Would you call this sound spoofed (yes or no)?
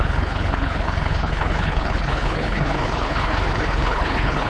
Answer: yes